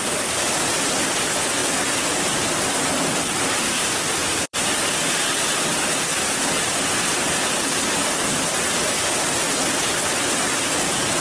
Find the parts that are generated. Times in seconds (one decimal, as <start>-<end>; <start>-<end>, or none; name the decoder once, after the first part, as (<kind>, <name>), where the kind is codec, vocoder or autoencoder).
1.6-2.7 (vocoder, BigVGAN v2); 3.8-9.0